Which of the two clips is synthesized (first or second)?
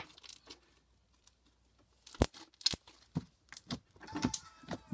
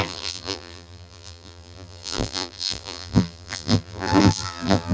second